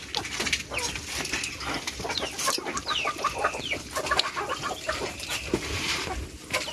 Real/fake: real